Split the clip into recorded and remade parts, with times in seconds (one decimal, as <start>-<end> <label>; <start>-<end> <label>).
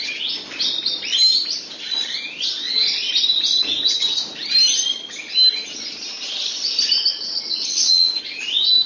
0.0-7.1 recorded; 7.1-8.2 remade; 8.2-8.9 recorded